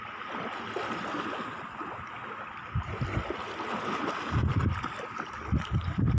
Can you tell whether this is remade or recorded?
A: recorded